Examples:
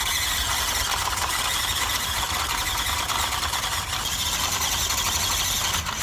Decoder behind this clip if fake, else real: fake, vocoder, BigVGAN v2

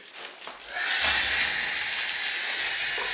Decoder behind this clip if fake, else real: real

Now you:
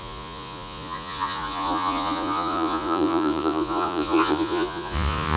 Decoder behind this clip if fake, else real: fake, vocoder, Vocos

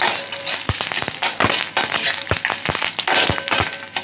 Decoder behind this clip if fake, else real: real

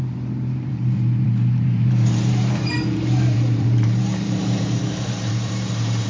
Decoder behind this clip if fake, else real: fake, vocoder, BigVGAN v2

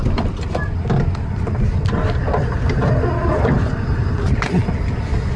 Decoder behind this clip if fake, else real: real